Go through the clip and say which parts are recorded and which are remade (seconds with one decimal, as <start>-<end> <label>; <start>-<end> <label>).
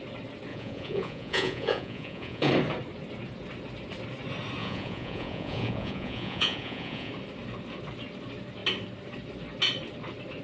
0.0-0.5 recorded; 0.5-2.5 remade; 2.5-4.6 recorded; 4.6-7.1 remade; 7.1-10.4 recorded